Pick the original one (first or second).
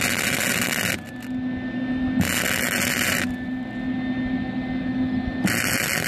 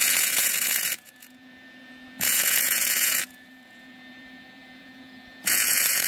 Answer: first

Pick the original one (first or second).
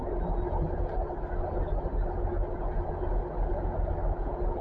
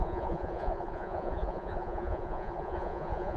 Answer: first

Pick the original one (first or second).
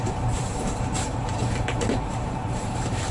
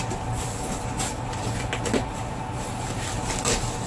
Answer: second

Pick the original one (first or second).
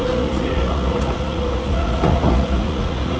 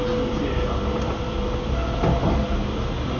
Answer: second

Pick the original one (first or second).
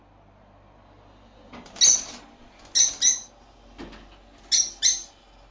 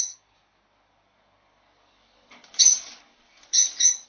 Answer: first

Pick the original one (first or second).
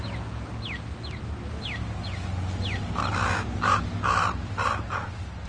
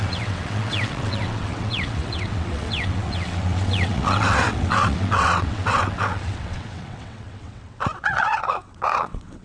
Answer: first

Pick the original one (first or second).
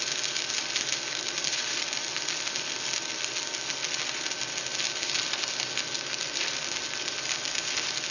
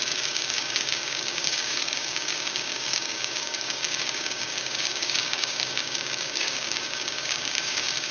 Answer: first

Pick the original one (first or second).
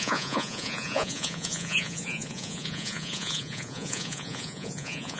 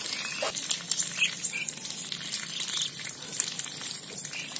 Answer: second